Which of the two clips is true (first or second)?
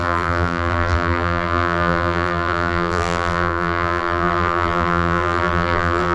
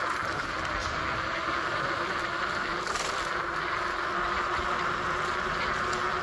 second